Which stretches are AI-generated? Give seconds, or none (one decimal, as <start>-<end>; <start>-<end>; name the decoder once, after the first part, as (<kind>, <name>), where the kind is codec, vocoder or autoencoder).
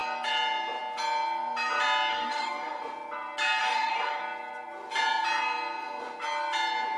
2.1-2.8 (codec, DAC); 3.6-4.2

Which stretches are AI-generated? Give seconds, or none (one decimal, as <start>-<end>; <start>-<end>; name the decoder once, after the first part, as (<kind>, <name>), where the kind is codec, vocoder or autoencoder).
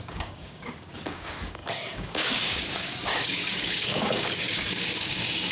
0.0-5.5 (codec, DAC)